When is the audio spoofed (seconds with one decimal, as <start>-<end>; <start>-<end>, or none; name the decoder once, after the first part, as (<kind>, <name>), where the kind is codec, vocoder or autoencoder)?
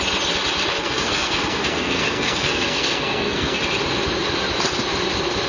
0.8-3.6 (codec, SNAC)